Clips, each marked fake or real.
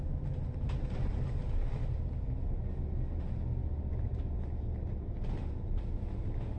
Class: real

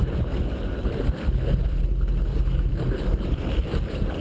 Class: fake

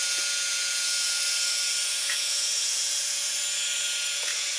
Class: fake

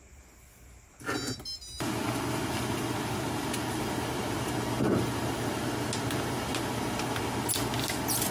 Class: real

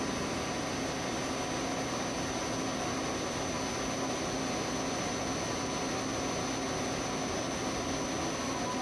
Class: real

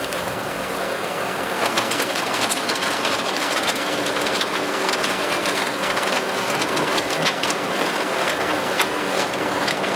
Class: fake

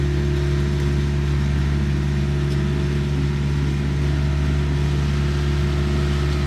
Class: real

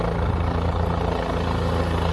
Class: real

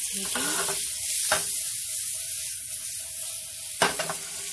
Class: real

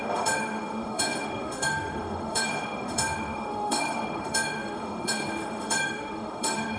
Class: fake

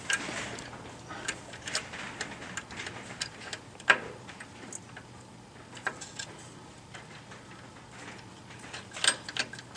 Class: real